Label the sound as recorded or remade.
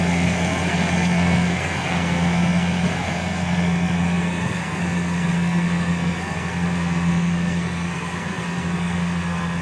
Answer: remade